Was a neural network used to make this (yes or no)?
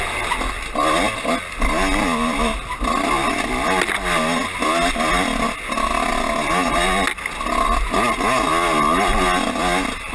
no